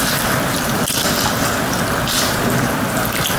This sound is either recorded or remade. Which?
recorded